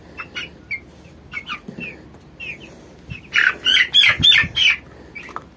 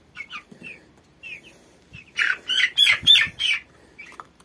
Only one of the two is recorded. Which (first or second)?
first